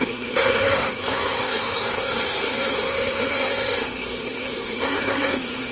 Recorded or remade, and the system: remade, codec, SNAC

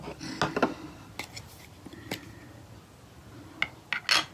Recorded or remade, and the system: recorded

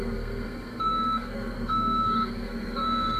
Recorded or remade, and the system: remade, codec, SNAC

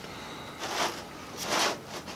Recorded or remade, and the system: recorded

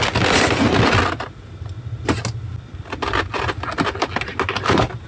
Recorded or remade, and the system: recorded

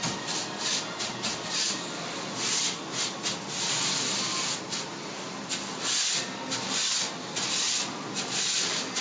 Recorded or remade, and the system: recorded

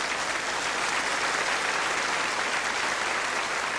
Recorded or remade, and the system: recorded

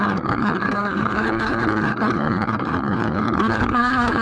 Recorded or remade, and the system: remade, codec, SNAC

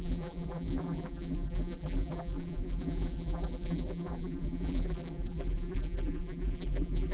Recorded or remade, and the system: remade, vocoder, BigVGAN v2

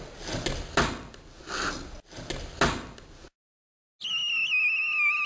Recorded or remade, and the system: recorded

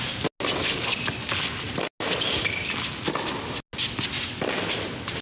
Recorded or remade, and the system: recorded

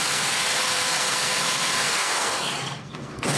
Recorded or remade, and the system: remade, codec, SNAC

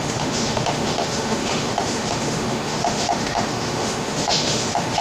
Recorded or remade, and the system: remade, autoencoder, DAC-VAE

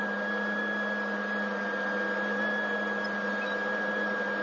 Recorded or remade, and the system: recorded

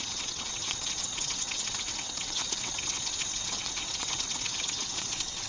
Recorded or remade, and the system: remade, vocoder, WaveNeXt